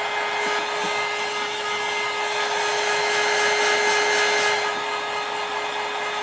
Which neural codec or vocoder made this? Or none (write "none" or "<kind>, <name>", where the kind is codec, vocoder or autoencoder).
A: none